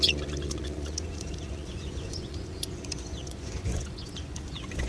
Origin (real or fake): fake